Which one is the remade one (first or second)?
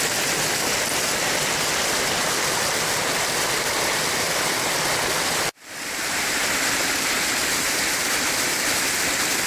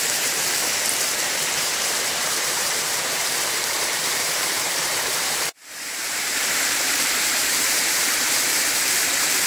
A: second